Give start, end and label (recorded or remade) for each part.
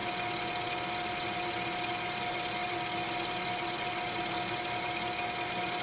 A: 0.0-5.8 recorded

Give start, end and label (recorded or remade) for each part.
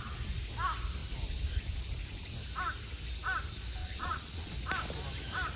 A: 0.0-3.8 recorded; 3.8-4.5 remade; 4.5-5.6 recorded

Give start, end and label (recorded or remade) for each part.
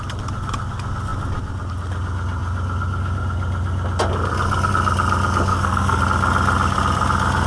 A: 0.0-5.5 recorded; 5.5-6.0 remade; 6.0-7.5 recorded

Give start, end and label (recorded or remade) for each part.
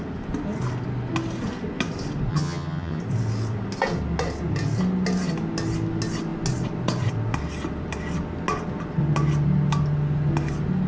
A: 0.0-2.3 recorded; 2.3-3.0 remade; 3.0-10.9 recorded